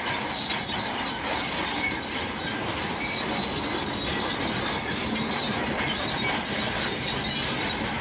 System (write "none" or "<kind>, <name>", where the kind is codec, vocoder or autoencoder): none